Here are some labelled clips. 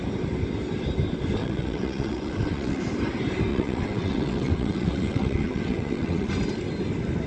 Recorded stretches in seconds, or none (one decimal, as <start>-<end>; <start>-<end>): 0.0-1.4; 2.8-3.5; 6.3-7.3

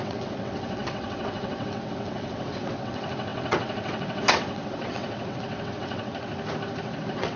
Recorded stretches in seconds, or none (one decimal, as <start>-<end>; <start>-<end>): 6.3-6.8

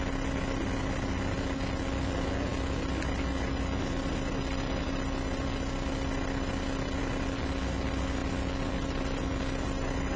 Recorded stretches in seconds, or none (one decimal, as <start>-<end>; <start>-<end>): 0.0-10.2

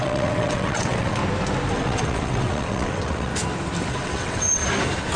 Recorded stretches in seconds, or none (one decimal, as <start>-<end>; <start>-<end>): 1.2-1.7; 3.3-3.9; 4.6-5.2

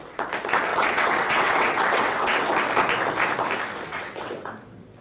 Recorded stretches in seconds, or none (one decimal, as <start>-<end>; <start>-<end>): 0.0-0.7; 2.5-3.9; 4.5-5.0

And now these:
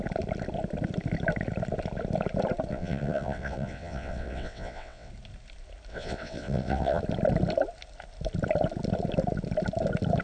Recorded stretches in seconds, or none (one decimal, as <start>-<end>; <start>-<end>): 0.0-2.7; 5.1-5.9; 7.0-10.2